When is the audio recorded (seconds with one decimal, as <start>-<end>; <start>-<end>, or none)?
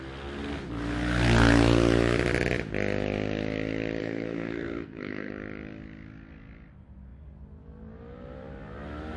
0.0-4.0; 5.3-9.2